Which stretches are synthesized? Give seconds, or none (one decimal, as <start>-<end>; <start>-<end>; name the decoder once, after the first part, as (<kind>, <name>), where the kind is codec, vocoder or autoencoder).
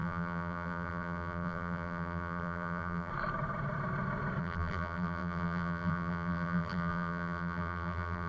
0.0-3.1 (vocoder, BigVGAN v2); 4.4-8.3